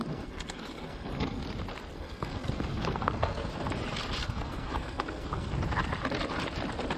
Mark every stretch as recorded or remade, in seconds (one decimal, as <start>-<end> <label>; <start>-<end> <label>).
0.0-1.4 remade; 1.4-1.9 recorded; 1.9-3.5 remade; 3.5-4.2 recorded; 4.2-5.5 remade; 5.5-7.0 recorded